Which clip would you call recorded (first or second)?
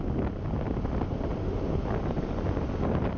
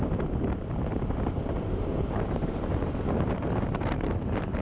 first